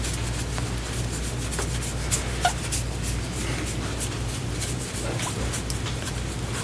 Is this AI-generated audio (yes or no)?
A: no